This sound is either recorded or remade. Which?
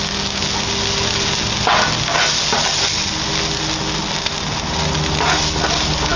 recorded